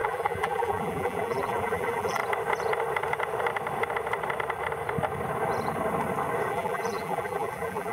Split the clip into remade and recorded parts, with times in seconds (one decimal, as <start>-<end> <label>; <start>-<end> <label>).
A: 0.0-2.2 remade; 2.2-6.5 recorded; 6.5-7.9 remade